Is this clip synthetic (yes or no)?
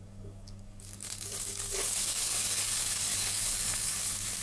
yes